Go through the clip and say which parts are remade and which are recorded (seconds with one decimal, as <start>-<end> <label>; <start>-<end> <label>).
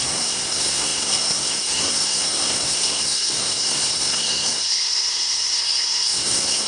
0.0-6.7 remade